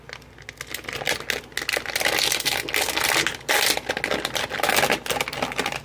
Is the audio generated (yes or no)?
no